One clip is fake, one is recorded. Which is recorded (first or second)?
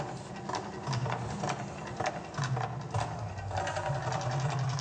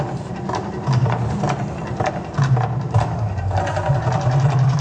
first